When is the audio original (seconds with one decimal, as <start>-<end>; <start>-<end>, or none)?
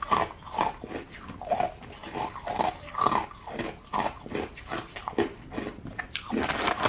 0.0-6.9